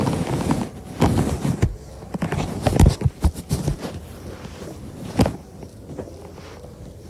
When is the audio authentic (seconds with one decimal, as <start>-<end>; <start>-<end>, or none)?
0.0-7.1